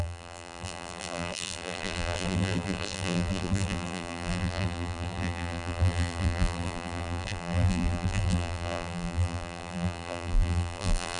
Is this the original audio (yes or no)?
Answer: no